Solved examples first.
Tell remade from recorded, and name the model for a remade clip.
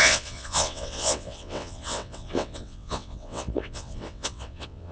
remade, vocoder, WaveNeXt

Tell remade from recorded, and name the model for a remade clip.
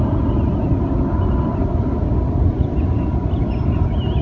recorded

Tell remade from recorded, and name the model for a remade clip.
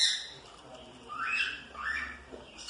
remade, vocoder, BigVGAN v2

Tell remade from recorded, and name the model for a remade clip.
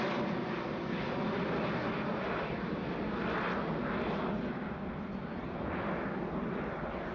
recorded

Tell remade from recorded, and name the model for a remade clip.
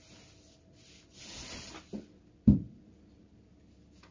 recorded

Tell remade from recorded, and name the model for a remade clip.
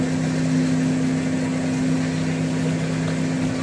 recorded